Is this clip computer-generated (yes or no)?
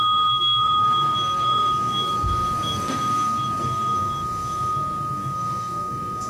yes